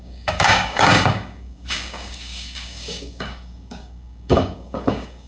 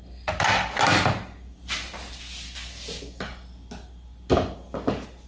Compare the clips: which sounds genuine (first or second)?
second